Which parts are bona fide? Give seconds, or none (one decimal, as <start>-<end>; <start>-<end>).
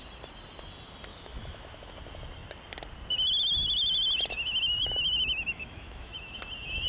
0.0-1.1; 1.9-4.8; 6.4-6.9